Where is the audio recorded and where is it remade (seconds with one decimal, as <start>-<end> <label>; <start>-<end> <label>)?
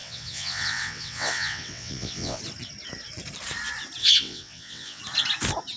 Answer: 0.0-2.4 remade; 2.4-4.0 recorded; 4.0-5.0 remade; 5.0-5.8 recorded